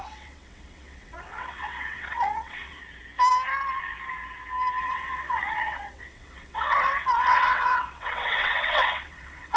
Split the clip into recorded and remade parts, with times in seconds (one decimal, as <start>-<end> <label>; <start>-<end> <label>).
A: 0.0-2.8 remade; 2.8-4.8 recorded; 4.8-9.6 remade